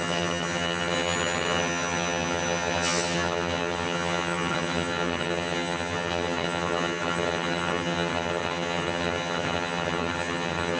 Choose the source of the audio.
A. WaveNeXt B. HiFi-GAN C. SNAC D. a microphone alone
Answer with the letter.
B